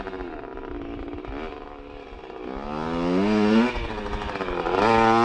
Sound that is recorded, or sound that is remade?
recorded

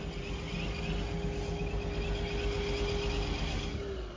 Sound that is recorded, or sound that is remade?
recorded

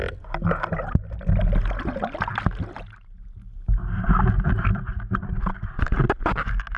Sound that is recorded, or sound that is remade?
recorded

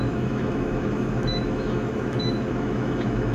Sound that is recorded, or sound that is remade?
remade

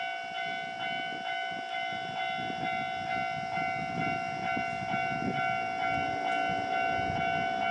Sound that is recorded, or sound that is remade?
recorded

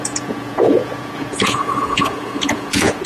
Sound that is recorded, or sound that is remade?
remade